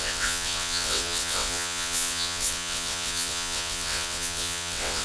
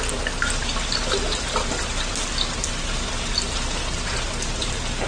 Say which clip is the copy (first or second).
first